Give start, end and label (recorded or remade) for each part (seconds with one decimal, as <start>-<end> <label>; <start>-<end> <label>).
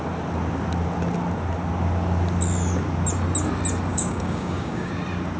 0.0-3.9 recorded; 3.9-4.9 remade; 4.9-5.4 recorded